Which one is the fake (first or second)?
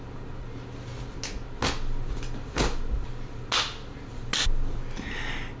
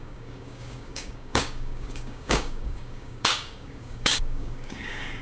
second